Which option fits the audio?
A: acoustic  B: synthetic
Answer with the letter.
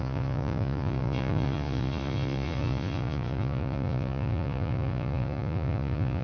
B